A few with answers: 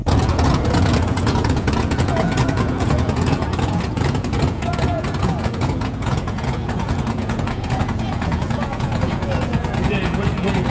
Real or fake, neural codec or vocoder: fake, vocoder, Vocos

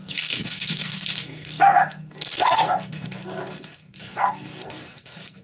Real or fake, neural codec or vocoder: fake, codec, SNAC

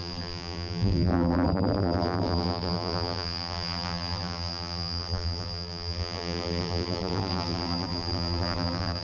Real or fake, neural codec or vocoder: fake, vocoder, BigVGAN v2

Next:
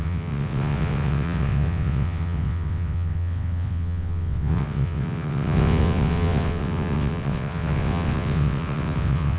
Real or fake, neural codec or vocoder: fake, vocoder, WaveNeXt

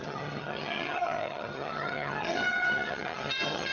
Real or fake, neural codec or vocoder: fake, vocoder, HiFi-GAN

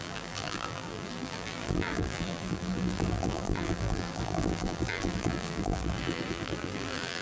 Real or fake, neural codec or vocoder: fake, vocoder, BigVGAN v2